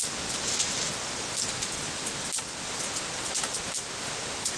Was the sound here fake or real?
real